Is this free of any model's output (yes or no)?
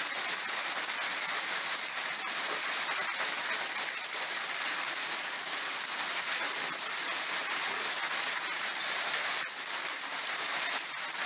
yes